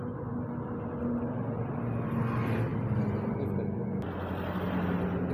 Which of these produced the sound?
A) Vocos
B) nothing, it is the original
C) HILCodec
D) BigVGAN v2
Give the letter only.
B